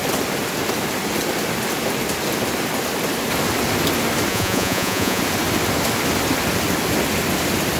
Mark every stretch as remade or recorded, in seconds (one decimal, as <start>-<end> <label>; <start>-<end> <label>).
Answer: 0.0-4.3 recorded; 4.3-5.2 remade; 5.2-7.8 recorded